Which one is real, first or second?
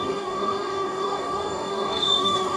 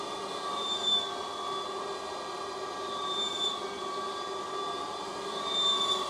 second